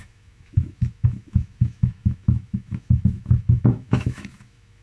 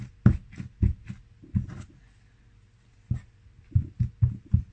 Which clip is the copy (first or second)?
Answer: first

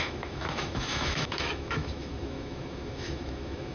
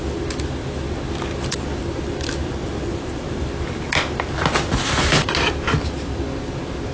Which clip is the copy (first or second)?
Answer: first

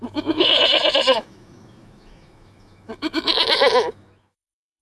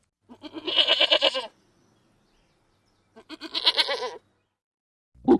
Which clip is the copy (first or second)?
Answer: first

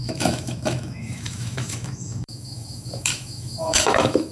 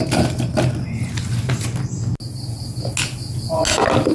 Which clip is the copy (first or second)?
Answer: first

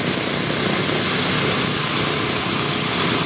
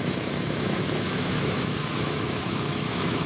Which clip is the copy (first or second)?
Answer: second